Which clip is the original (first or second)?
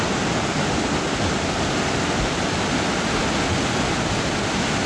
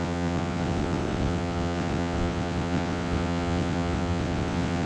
first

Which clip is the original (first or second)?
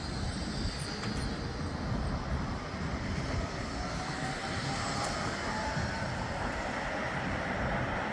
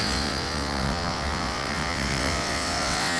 first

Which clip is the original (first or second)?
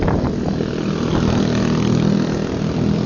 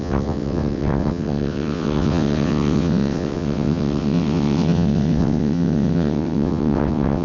first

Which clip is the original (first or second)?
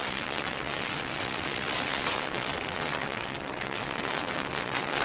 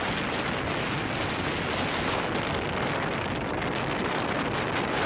second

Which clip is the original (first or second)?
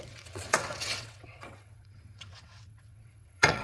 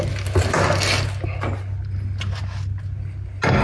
second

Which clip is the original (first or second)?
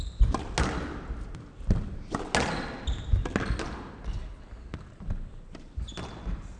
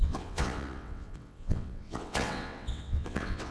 first